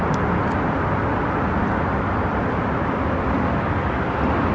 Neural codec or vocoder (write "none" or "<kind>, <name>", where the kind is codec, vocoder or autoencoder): none